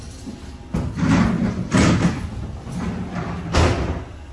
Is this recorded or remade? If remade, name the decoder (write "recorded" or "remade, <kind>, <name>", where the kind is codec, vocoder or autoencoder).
recorded